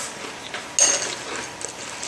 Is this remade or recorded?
recorded